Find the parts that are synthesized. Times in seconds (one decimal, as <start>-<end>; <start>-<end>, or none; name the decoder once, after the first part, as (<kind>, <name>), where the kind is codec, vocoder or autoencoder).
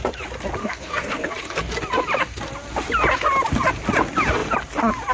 0.6-1.3 (codec, SNAC)